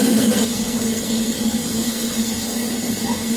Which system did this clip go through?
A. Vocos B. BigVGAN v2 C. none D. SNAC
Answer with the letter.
D